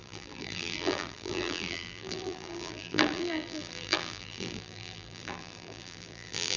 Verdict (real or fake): fake